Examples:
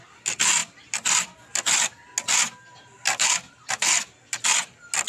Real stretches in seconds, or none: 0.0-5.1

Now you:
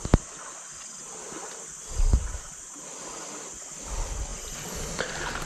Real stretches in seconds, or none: 0.0-5.5

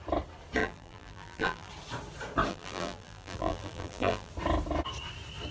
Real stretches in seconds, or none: 0.0-0.6; 1.7-2.5; 4.3-5.5

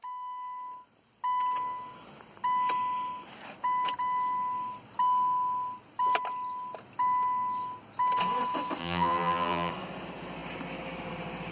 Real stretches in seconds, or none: 0.0-8.8; 9.7-11.5

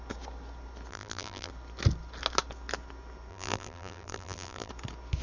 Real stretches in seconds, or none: 0.0-0.9; 1.5-3.3; 4.7-5.2

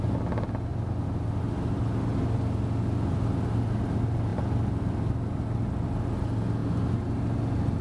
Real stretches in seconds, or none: 0.0-7.8

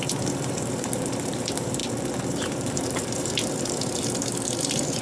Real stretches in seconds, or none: 1.8-2.3

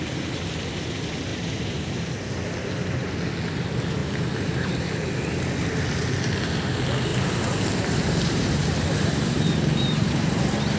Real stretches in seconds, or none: 0.0-1.3; 1.9-4.0; 4.9-7.1